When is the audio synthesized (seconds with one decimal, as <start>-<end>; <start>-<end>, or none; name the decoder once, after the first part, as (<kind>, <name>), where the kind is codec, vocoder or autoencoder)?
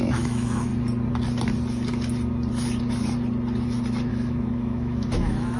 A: 0.0-0.7 (autoencoder, DAC-VAE); 4.1-5.6